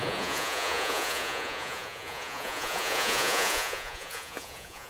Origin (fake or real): fake